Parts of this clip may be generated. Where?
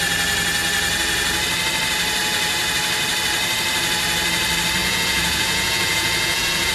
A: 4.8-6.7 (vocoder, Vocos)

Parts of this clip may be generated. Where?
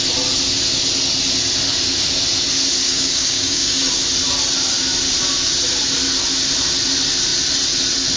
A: 2.8-3.9 (codec, DAC)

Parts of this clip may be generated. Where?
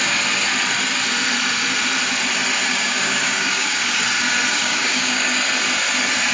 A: 2.7-4.0 (codec, DAC); 4.6-5.3